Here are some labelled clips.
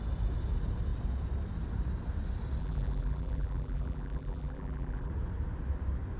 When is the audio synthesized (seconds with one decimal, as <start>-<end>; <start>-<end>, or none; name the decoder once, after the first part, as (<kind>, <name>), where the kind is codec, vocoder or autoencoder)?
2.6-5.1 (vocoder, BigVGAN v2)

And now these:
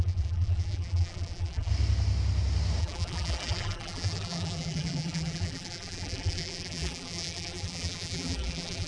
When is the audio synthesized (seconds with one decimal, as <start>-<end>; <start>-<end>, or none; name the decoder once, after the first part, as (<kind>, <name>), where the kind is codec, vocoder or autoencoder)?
0.0-1.7 (vocoder, BigVGAN v2); 2.8-8.9

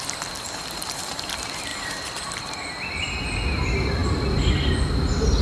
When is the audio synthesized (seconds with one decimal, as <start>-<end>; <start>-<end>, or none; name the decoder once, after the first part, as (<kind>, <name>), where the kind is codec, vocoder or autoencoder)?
none

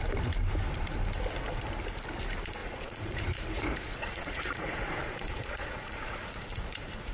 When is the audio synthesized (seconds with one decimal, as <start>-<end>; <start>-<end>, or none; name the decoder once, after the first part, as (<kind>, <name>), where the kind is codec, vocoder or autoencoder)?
2.6-7.1 (vocoder, Vocos)

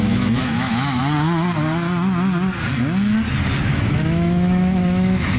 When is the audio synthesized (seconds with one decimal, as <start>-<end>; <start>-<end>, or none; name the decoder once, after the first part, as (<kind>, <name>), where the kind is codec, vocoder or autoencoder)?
0.0-1.0 (autoencoder, DAC-VAE); 3.6-5.4

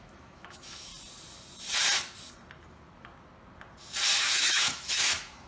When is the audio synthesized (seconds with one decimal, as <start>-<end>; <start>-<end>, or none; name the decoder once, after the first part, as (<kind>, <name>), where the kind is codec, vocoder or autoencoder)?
0.0-0.9 (autoencoder, DAC-VAE); 4.2-5.5

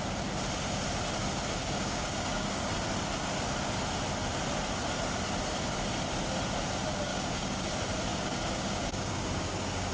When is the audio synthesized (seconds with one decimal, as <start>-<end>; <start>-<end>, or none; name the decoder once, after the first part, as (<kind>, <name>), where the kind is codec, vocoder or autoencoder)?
1.6-2.7 (codec, DAC); 7.1-7.6; 8.1-9.9

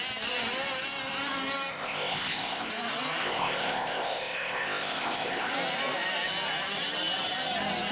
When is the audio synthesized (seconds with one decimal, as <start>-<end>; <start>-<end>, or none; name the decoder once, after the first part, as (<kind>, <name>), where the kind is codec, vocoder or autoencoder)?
1.7-2.7 (codec, ZipCodec); 3.2-5.5